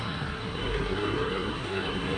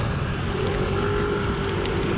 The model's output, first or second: first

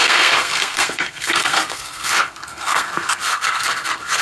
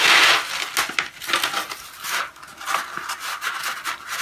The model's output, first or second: first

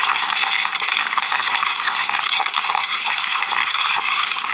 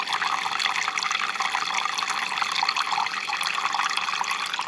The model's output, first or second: first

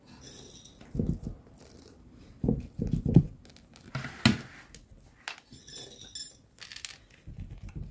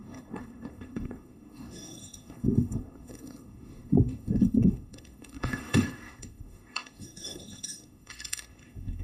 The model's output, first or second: second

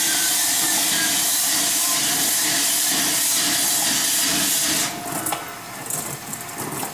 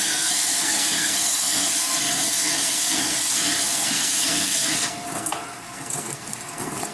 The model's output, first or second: second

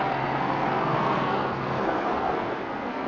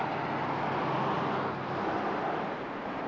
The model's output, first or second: first